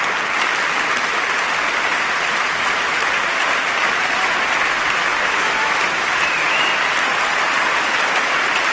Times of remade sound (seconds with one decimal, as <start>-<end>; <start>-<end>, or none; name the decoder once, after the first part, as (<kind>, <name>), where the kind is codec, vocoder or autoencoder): 5.0-5.8 (autoencoder, DAC-VAE)